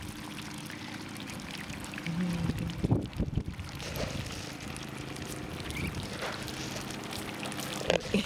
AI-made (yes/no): no